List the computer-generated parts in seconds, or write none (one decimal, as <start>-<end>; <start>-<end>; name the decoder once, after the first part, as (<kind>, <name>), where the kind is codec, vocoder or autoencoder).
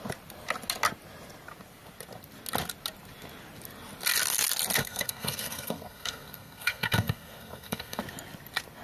4.8-8.0 (codec, SNAC)